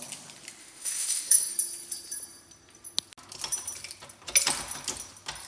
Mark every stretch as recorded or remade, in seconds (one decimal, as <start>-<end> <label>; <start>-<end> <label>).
0.0-0.6 recorded; 0.6-1.5 remade; 1.5-5.5 recorded